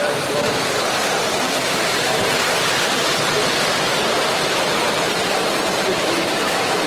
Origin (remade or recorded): remade